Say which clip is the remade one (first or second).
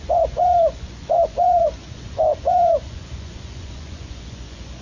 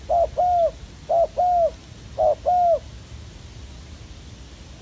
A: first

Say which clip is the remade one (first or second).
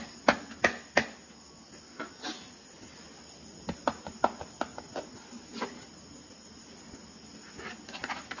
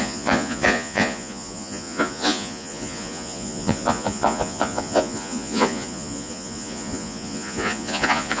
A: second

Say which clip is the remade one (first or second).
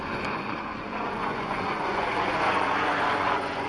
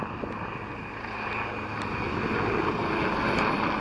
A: first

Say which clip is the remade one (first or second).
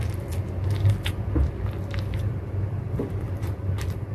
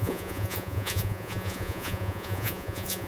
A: second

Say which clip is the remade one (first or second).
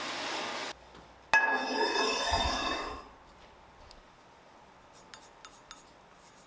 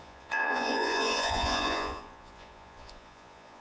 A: second